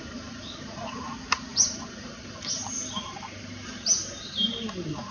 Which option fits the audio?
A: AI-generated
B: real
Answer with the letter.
B